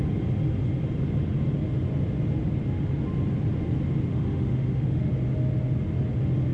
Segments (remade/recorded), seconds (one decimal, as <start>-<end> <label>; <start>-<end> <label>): 0.0-4.1 recorded; 4.1-5.1 remade; 5.1-6.5 recorded

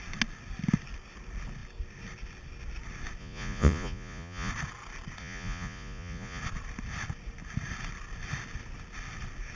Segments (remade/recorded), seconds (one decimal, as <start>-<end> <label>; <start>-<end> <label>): 0.0-3.2 recorded; 3.2-4.5 remade; 4.5-5.2 recorded; 5.2-6.4 remade; 6.4-9.6 recorded

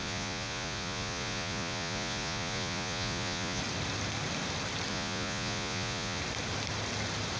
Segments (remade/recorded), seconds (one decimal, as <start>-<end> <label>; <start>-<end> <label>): 0.0-3.6 remade; 3.6-4.9 recorded; 4.9-6.2 remade; 6.2-7.4 recorded

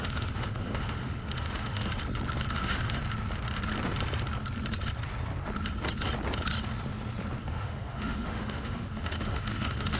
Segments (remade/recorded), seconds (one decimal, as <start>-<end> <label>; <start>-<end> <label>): 0.0-1.9 remade; 1.9-2.5 recorded; 2.5-3.0 remade; 3.0-7.4 recorded; 7.4-10.0 remade